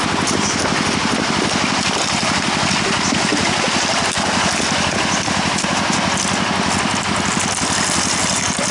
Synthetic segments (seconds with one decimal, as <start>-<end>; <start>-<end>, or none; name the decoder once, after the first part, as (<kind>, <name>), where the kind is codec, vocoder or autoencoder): none